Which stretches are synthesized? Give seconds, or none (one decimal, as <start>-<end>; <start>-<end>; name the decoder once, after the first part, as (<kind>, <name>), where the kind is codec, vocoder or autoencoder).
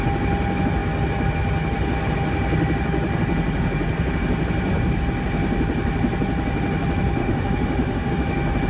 7.2-8.1 (autoencoder, DAC-VAE)